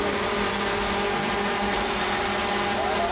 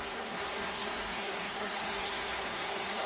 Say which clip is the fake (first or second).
second